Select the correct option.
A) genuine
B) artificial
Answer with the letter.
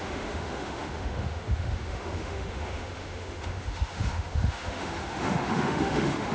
B